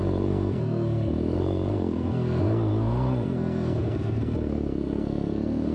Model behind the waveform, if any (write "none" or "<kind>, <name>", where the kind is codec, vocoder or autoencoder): codec, SNAC